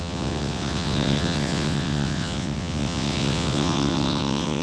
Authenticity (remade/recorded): remade